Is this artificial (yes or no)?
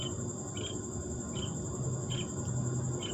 no